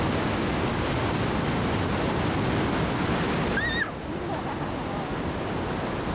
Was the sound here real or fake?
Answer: real